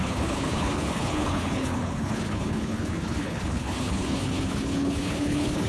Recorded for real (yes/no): no